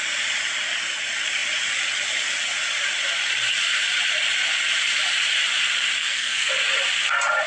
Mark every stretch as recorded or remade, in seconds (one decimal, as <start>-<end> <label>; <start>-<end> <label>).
0.0-6.0 recorded; 6.0-6.5 remade; 6.5-7.5 recorded